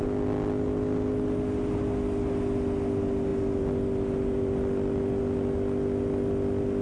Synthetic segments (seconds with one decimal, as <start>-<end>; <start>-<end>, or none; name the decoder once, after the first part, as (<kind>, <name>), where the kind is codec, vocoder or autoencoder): none